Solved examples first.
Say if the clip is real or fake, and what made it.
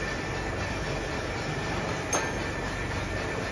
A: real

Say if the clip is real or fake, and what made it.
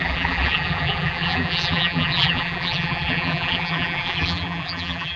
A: fake, vocoder, BigVGAN v2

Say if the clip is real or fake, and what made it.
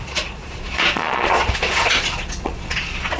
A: fake, vocoder, Vocos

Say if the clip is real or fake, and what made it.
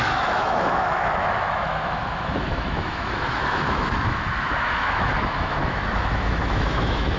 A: fake, autoencoder, DAC-VAE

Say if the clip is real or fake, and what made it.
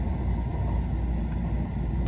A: real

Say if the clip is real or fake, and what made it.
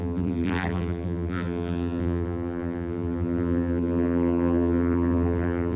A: fake, vocoder, BigVGAN v2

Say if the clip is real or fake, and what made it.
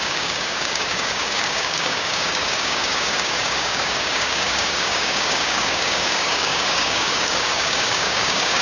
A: fake, codec, DAC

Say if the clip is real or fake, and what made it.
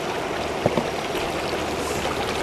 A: real